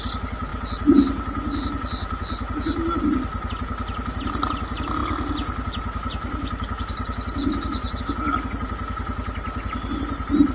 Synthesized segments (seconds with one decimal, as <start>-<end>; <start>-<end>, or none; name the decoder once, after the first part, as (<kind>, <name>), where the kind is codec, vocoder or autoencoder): none